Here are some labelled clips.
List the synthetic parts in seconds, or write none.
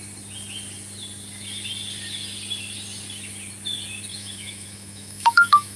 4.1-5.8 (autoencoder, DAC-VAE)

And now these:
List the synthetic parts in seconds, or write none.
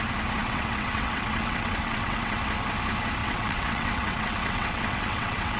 0.4-2.4 (vocoder, WaveNeXt); 3.2-5.6